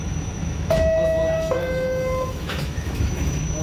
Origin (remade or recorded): remade